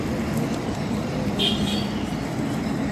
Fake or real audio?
real